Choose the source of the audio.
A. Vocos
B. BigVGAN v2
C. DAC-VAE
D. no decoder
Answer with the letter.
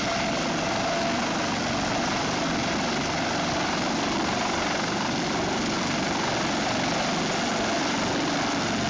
D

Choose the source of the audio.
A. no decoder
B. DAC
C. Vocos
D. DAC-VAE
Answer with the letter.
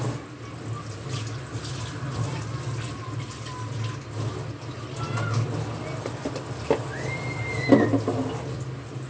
A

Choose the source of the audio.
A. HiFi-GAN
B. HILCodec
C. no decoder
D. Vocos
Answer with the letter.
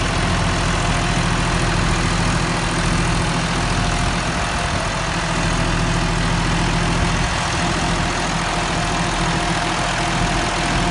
C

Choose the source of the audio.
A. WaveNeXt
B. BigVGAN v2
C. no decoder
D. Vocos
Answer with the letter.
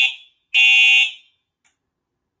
C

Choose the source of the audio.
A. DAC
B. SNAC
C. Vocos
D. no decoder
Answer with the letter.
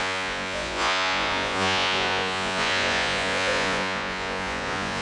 C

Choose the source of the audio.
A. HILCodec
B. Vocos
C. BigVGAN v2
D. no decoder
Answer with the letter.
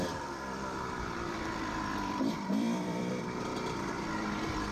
C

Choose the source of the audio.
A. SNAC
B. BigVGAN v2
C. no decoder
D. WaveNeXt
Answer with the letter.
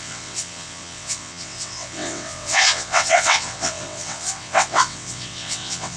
D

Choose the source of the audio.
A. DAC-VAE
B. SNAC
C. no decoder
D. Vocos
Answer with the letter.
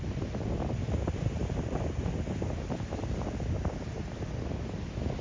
C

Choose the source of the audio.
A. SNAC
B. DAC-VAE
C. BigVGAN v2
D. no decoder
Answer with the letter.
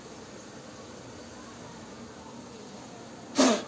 D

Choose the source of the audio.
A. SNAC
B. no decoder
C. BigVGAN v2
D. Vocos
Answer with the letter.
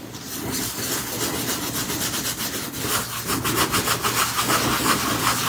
B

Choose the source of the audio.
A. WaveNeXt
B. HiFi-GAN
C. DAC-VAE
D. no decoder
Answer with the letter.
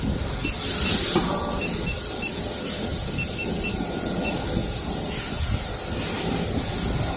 D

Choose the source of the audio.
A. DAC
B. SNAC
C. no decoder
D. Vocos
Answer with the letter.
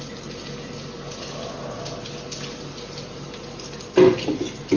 C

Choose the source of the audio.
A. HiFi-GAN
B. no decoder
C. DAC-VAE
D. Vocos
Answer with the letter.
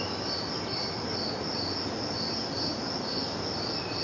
B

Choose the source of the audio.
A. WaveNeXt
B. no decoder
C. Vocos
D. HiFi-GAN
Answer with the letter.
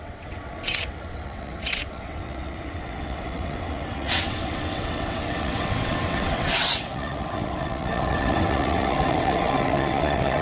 A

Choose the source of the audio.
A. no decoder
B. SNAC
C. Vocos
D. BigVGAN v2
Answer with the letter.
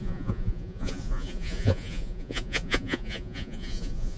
C